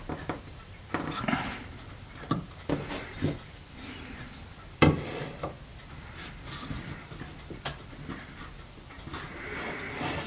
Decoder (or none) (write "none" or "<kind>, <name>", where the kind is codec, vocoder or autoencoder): none